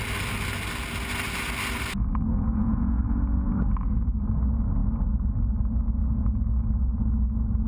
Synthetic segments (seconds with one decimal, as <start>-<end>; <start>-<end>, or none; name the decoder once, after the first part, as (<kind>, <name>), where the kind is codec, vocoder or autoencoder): 2.3-3.5 (vocoder, Vocos)